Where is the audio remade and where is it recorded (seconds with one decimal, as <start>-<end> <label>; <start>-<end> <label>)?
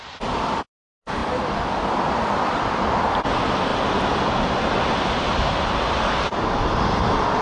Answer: 0.0-1.2 recorded; 1.2-3.0 remade; 3.0-7.4 recorded